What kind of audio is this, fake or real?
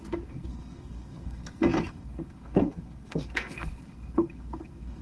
fake